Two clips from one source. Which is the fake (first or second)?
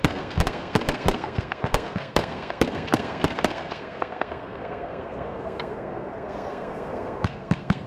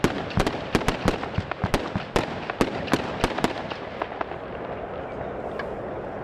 first